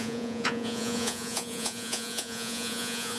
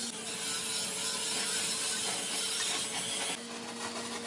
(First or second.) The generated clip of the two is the first